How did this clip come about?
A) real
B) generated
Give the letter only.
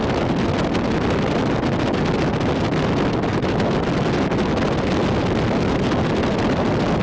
A